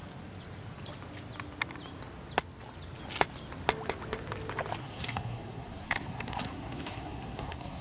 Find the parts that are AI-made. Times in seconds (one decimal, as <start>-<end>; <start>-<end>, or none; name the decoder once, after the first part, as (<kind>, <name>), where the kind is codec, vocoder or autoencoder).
4.8-7.8 (codec, SNAC)